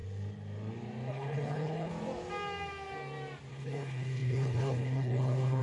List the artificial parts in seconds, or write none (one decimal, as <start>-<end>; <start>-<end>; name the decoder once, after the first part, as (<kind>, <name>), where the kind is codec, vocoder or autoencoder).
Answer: 1.1-1.9 (codec, HILCodec); 3.5-5.6